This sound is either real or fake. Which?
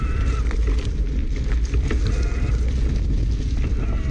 real